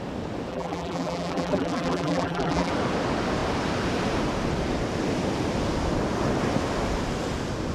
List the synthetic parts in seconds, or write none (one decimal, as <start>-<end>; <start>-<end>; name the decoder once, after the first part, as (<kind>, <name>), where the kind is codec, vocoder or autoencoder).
0.5-2.7 (vocoder, BigVGAN v2)